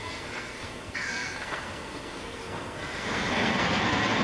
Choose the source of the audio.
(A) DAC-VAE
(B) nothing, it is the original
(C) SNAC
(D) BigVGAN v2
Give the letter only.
C